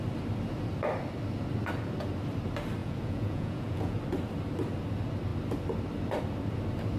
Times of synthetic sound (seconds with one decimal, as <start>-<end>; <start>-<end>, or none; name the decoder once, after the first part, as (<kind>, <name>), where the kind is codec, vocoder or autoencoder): 2.8-4.0 (vocoder, Vocos)